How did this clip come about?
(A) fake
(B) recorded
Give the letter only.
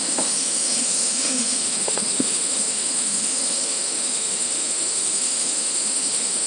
A